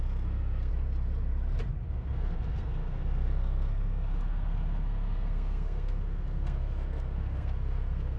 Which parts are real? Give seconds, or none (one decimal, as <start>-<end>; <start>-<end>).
0.7-1.9